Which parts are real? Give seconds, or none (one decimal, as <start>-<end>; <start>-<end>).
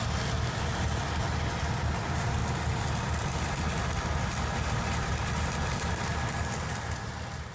2.4-5.1; 6.1-6.7